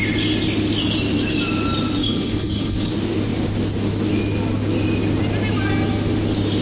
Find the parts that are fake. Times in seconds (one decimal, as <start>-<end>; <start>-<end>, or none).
2.0-2.9